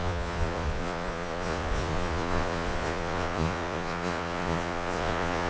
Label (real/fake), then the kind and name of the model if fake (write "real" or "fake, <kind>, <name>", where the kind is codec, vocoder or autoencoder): fake, vocoder, Vocos